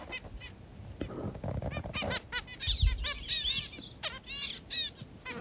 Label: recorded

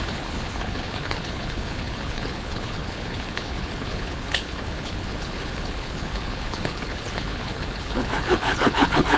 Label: remade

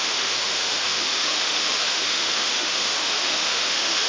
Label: remade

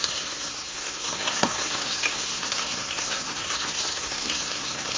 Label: remade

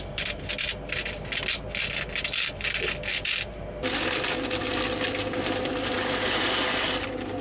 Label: recorded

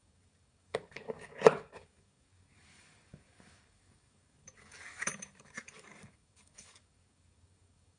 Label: remade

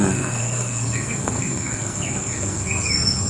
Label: remade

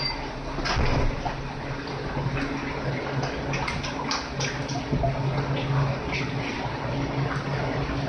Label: recorded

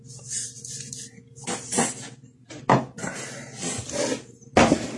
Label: recorded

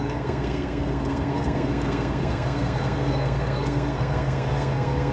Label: remade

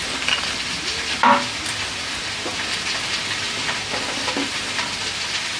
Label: recorded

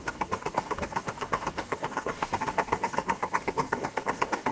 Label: remade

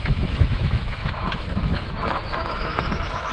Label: remade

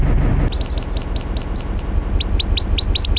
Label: recorded